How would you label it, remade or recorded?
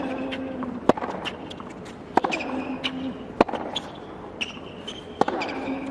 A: recorded